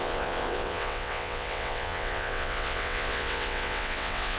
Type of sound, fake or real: fake